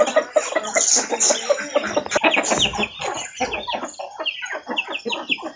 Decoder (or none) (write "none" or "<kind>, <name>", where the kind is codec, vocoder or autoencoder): none